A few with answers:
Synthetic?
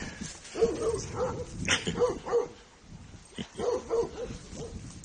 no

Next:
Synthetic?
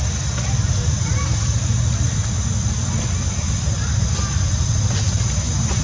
no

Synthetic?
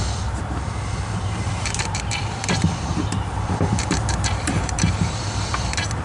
yes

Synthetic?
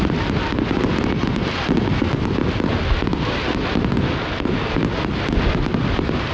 no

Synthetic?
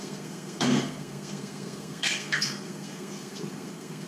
yes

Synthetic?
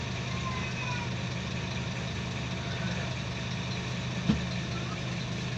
no